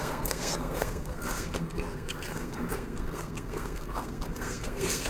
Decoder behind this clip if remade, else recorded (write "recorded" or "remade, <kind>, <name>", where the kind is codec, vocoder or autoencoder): remade, codec, SNAC